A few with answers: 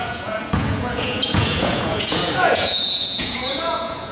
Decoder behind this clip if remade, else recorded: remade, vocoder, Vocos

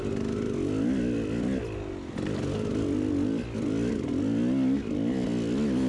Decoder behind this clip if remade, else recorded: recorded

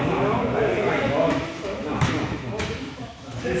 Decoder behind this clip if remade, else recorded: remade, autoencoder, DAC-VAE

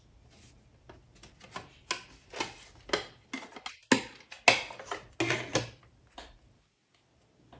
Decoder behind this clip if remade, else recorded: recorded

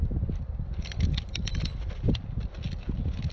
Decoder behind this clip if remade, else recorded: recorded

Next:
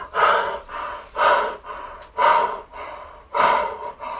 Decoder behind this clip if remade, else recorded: recorded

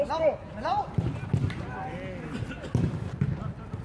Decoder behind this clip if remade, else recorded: recorded